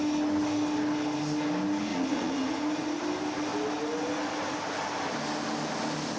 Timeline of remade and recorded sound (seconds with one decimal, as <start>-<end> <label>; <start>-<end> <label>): 0.0-1.9 recorded; 1.9-2.6 remade; 2.6-6.2 recorded